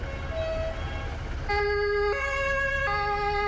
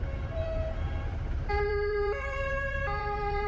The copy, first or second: second